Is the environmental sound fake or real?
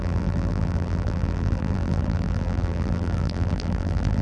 fake